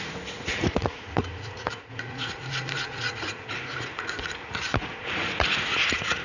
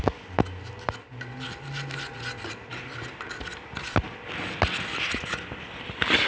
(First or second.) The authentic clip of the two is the second